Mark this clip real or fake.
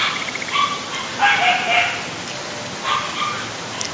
real